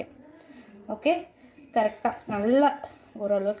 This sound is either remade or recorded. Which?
remade